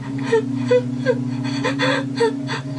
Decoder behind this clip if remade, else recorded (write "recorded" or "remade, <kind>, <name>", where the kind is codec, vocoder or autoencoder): recorded